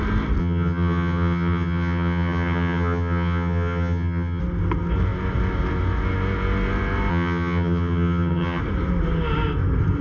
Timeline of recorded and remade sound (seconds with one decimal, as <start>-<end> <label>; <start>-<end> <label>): 0.0-0.4 recorded; 0.4-4.4 remade; 4.4-7.1 recorded; 7.1-8.6 remade; 8.6-10.0 recorded